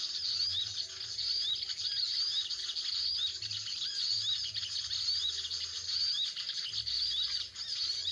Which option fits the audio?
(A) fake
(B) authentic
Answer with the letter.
B